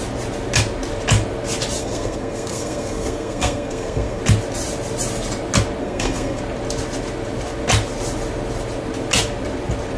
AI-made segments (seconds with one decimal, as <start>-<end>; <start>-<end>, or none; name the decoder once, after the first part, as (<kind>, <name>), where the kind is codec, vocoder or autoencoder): 1.8-4.2 (codec, SNAC); 5.8-6.4